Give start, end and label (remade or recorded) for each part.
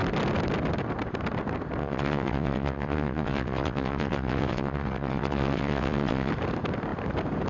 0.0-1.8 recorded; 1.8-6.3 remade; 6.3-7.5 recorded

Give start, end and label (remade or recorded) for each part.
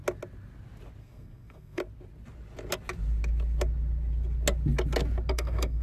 0.0-1.0 recorded; 1.0-1.8 remade; 1.8-5.3 recorded; 5.3-5.8 remade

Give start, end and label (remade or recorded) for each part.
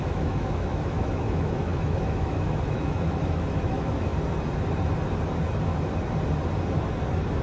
0.0-4.1 remade; 4.1-7.4 recorded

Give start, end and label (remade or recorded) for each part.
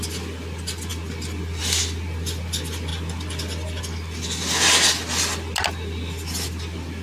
0.0-7.0 recorded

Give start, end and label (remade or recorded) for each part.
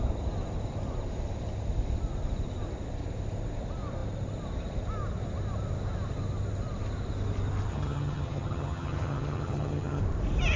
0.0-7.7 recorded; 7.7-10.0 remade; 10.0-10.6 recorded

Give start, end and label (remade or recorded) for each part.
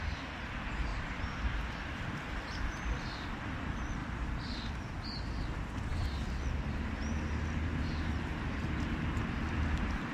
0.0-0.9 recorded; 0.9-1.7 remade; 1.7-4.0 recorded; 4.0-4.7 remade; 4.7-10.1 recorded